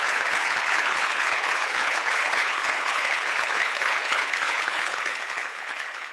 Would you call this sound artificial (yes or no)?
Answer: yes